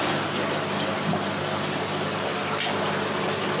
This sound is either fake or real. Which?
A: real